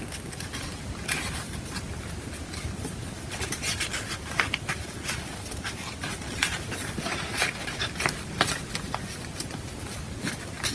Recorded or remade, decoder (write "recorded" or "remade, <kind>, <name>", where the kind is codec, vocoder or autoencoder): recorded